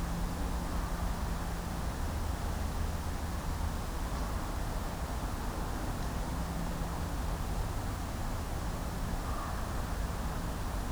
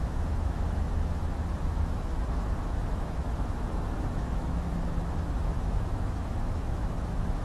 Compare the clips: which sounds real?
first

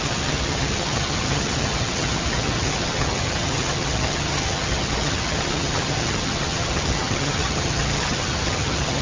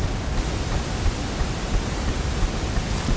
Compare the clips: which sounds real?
second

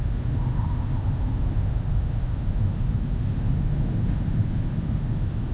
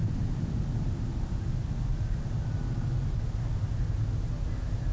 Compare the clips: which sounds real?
second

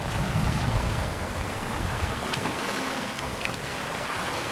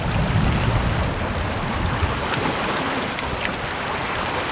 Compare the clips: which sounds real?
second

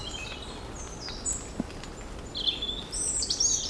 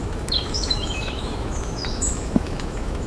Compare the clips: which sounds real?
first